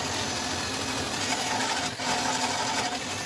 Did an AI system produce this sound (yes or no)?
no